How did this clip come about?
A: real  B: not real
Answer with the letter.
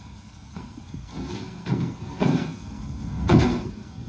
B